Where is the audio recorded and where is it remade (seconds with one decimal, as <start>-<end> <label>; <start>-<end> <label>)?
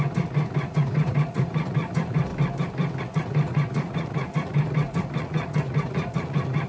0.0-2.3 remade; 2.3-3.0 recorded; 3.0-6.7 remade